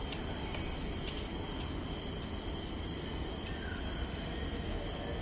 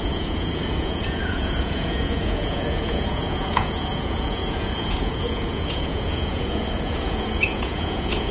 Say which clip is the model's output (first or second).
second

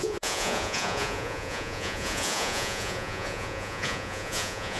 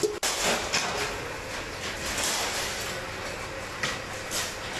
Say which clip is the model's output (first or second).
first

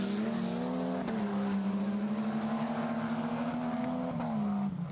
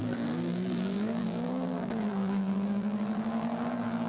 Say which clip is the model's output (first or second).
second